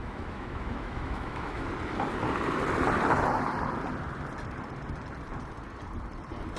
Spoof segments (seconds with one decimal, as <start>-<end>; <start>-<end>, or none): 0.0-1.7